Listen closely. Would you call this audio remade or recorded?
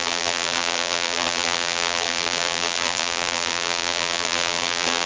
remade